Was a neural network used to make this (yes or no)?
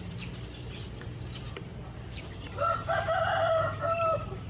yes